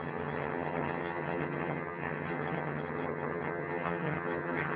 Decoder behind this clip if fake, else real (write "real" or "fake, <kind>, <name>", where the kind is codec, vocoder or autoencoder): fake, vocoder, HiFi-GAN